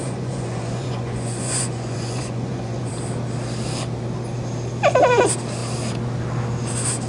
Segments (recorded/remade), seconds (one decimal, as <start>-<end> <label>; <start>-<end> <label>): 0.0-2.9 remade; 2.9-7.1 recorded

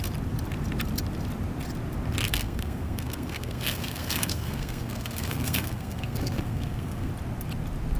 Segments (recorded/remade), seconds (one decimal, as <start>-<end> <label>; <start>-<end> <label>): 0.0-2.3 recorded; 2.3-7.1 remade; 7.1-8.0 recorded